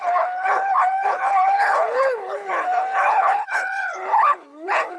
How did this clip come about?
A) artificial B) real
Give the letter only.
A